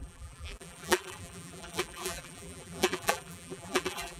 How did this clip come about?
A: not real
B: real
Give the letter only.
A